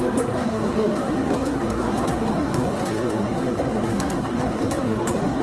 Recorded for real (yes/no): no